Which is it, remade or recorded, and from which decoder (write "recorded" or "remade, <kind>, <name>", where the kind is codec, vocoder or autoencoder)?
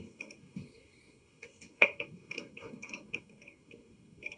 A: remade, codec, SNAC